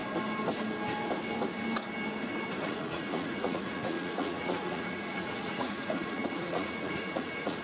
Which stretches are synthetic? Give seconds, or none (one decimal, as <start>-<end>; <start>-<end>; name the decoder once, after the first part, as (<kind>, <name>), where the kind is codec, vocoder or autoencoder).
2.6-7.6 (vocoder, Vocos)

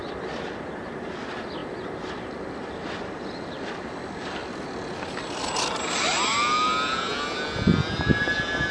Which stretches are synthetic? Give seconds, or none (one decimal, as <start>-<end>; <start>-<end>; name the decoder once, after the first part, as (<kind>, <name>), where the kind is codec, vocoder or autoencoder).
0.0-0.7 (vocoder, BigVGAN v2); 1.6-3.5

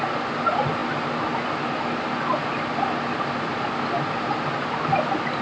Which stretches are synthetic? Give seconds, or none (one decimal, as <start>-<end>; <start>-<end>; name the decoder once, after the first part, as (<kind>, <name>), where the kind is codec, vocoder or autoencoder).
none

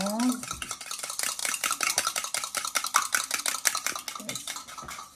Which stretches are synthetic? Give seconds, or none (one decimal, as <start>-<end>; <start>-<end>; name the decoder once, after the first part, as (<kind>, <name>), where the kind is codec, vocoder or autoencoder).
1.4-3.4 (vocoder, BigVGAN v2)